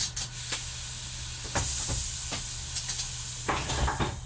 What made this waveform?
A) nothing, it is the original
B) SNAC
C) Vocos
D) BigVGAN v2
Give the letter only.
A